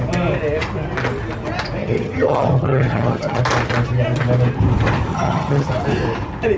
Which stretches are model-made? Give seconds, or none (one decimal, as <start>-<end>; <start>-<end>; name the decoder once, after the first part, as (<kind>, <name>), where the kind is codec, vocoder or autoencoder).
1.8-3.4 (vocoder, HiFi-GAN); 5.1-5.7

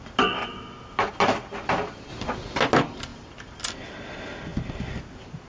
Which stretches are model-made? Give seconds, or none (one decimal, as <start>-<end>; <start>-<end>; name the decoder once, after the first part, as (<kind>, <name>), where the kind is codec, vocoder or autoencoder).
none

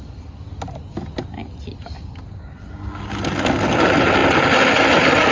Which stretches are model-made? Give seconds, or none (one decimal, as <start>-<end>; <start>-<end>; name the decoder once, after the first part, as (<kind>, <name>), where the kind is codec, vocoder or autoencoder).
none

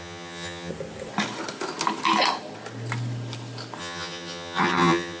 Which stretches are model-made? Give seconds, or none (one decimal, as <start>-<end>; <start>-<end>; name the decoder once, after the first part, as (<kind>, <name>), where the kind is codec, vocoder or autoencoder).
0.0-0.7 (vocoder, HiFi-GAN); 3.8-5.2